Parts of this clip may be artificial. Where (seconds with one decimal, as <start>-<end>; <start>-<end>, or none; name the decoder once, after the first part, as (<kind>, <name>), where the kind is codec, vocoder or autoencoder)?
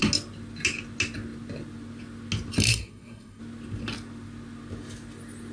2.7-3.4 (codec, SNAC)